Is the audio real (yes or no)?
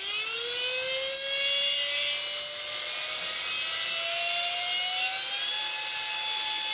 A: yes